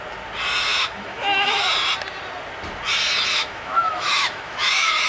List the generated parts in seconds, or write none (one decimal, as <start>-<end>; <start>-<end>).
0.7-1.7; 3.3-5.1